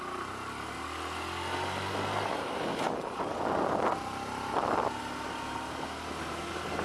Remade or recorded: recorded